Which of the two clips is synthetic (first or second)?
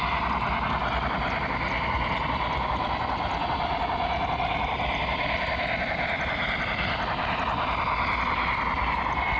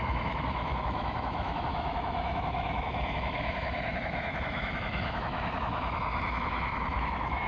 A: second